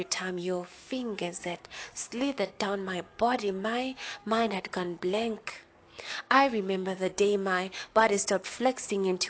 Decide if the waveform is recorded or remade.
remade